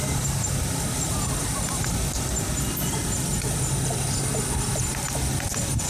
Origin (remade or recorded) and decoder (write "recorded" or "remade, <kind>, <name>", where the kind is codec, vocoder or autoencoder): recorded